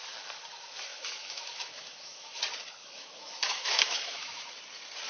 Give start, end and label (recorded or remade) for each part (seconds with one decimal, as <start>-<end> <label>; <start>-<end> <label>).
0.0-0.9 recorded; 0.9-2.4 remade; 2.4-2.8 recorded; 2.8-4.5 remade; 4.5-5.1 recorded